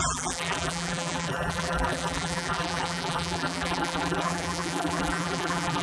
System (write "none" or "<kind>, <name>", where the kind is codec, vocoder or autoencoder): vocoder, BigVGAN v2